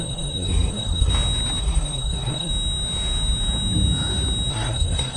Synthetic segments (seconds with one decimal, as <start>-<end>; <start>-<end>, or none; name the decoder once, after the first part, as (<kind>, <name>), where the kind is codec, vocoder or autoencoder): 0.0-1.1 (codec, SNAC); 1.6-2.5; 4.5-5.2